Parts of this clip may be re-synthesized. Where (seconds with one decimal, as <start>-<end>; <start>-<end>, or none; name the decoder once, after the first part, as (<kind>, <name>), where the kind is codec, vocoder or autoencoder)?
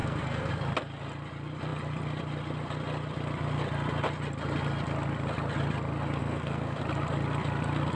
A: 0.0-0.5 (codec, SNAC); 6.2-6.8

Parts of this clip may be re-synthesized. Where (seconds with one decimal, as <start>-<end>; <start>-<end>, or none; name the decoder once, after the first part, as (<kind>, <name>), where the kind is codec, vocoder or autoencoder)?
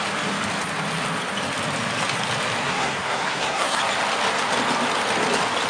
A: 2.6-3.8 (codec, SNAC)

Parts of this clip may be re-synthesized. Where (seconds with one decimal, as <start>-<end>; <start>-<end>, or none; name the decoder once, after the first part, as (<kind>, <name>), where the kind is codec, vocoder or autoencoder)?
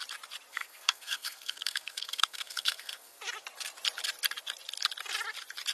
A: 0.5-3.2 (codec, SNAC)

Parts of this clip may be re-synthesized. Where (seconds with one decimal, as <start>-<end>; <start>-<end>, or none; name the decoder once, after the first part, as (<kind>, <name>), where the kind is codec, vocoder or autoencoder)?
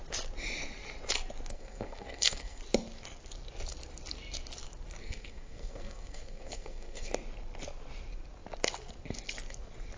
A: 1.5-2.6 (codec, SNAC); 5.0-7.1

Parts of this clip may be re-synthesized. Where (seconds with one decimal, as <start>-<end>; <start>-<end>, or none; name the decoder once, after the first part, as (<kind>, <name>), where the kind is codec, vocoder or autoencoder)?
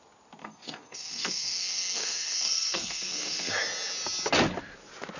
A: 0.4-3.5 (codec, SNAC)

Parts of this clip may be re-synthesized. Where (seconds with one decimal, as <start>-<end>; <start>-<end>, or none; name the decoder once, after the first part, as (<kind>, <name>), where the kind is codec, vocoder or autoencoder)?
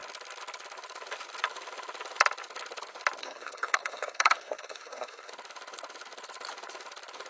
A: 3.2-5.3 (codec, SNAC)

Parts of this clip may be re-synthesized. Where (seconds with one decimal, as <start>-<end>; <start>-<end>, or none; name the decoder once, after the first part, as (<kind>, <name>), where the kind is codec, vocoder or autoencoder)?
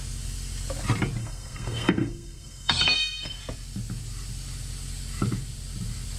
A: 1.2-3.4 (codec, SNAC)